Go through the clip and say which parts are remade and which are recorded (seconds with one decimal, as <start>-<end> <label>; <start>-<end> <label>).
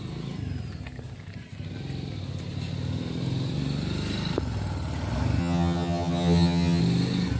0.0-5.4 recorded; 5.4-6.8 remade; 6.8-7.4 recorded